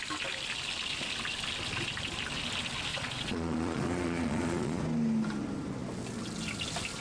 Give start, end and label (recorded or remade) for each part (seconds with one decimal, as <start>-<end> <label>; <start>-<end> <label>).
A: 0.0-2.9 recorded; 2.9-4.8 remade; 4.8-7.0 recorded